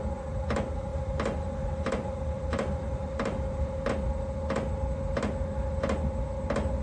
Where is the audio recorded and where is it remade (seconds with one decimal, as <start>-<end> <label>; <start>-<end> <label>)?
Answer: 0.0-0.9 recorded; 0.9-3.9 remade; 3.9-6.8 recorded